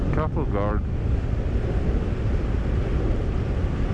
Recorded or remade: recorded